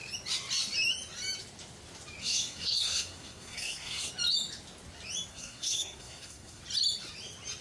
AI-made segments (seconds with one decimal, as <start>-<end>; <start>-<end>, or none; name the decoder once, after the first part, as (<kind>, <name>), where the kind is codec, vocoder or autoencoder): 2.2-4.1 (codec, SNAC); 5.3-6.6